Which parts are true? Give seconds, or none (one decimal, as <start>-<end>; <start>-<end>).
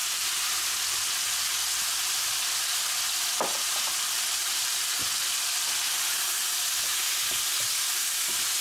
0.0-3.5; 4.8-8.6